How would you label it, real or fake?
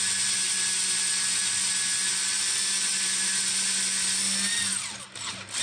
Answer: real